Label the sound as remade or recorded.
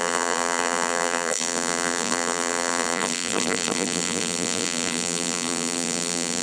remade